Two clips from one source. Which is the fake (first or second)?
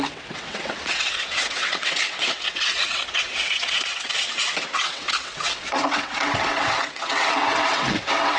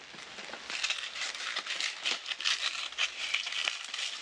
first